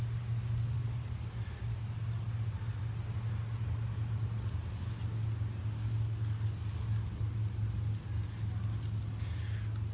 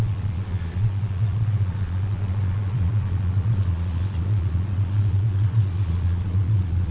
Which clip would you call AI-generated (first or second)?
second